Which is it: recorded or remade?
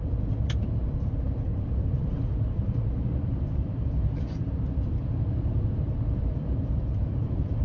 remade